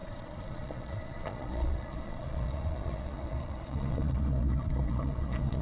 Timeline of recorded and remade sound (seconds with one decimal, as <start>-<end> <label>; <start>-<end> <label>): 0.0-5.6 remade